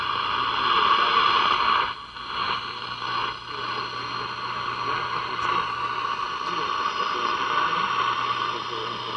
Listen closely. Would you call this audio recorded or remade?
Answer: recorded